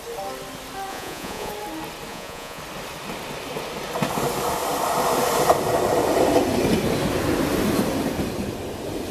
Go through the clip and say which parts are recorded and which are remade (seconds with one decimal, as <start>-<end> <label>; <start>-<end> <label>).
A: 0.0-0.9 recorded; 0.9-1.5 remade; 1.5-2.1 recorded; 2.1-2.6 remade; 2.6-9.1 recorded